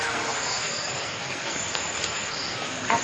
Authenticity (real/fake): fake